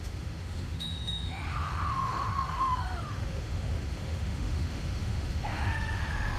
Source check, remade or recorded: remade